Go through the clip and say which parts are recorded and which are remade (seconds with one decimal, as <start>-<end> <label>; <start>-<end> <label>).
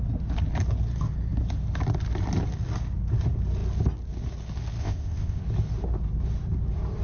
0.0-4.8 recorded; 4.8-5.4 remade; 5.4-7.0 recorded